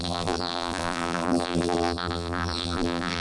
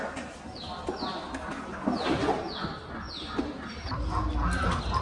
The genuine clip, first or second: second